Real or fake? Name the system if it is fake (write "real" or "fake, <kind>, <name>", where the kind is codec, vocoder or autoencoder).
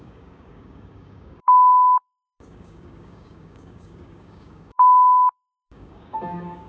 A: fake, codec, DAC